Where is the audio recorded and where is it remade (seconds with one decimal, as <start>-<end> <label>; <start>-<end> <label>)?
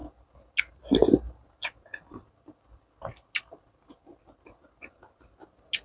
0.0-5.8 recorded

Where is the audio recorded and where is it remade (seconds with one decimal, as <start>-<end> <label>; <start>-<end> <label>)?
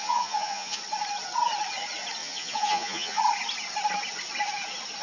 0.0-0.8 remade; 0.8-2.2 recorded; 2.2-3.2 remade; 3.2-5.0 recorded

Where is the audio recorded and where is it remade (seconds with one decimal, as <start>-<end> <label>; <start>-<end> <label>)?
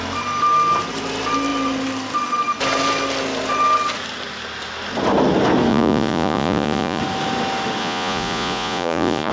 0.0-5.7 recorded; 5.7-7.0 remade; 7.0-7.8 recorded; 7.8-9.3 remade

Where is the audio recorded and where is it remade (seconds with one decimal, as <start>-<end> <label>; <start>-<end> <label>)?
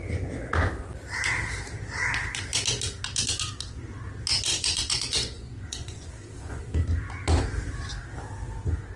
0.0-4.5 recorded; 4.5-6.6 remade; 6.6-9.0 recorded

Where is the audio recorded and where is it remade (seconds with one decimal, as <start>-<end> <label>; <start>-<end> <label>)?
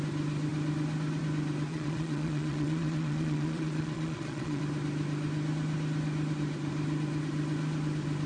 0.0-1.7 recorded; 1.7-4.6 remade; 4.6-8.3 recorded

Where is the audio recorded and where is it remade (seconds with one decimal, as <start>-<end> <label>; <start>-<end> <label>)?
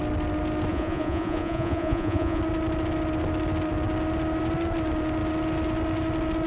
0.0-0.7 recorded; 0.7-2.4 remade; 2.4-6.5 recorded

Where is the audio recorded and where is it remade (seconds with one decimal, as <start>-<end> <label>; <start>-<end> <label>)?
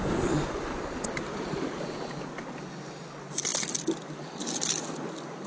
0.0-5.5 recorded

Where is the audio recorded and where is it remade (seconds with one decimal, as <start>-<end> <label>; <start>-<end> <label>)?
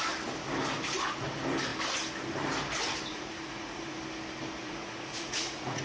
0.0-3.1 recorded; 3.1-4.0 remade; 4.0-4.6 recorded; 4.6-5.8 remade